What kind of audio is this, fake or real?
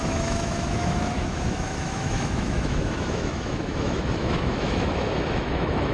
fake